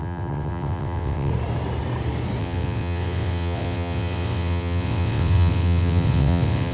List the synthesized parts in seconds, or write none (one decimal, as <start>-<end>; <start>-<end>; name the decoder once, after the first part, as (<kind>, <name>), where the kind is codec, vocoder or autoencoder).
0.0-1.3 (vocoder, WaveNeXt); 2.4-6.7